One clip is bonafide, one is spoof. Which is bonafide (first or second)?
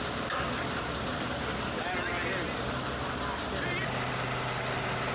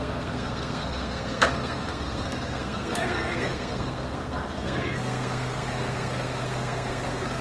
first